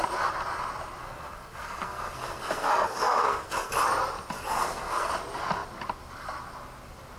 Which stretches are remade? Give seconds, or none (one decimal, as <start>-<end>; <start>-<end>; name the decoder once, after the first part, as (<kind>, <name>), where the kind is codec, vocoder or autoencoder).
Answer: 1.0-3.7 (codec, SNAC); 4.5-5.1